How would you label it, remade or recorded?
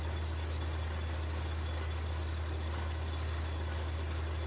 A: recorded